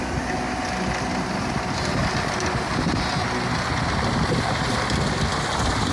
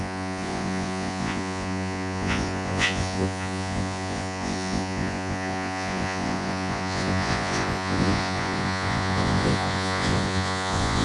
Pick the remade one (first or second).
second